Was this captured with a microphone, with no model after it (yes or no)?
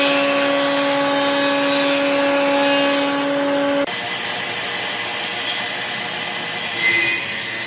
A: yes